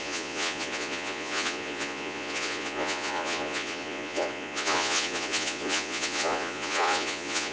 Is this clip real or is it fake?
fake